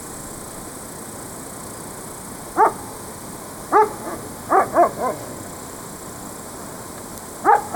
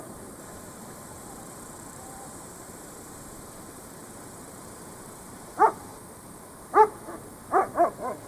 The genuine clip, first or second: first